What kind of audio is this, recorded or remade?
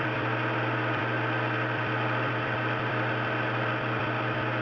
remade